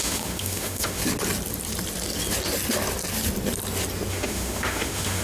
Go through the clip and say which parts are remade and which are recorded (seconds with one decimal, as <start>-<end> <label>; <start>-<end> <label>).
0.0-1.0 remade; 1.0-4.1 recorded; 4.1-5.2 remade